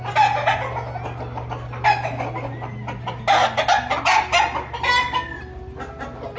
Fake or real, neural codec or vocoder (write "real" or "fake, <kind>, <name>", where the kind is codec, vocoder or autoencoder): real